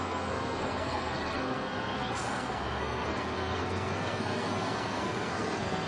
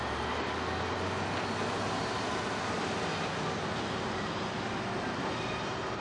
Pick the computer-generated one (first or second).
first